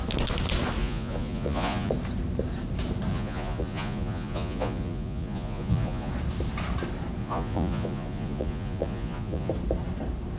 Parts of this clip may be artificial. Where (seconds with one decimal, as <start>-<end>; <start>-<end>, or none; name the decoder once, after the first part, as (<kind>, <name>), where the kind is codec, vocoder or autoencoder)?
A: 0.8-1.9 (vocoder, Vocos); 3.1-6.1; 7.2-9.5